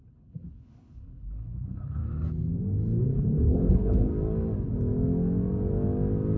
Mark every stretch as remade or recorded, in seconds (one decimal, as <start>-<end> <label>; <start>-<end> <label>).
0.0-2.0 remade; 2.0-3.0 recorded; 3.0-4.1 remade; 4.1-6.4 recorded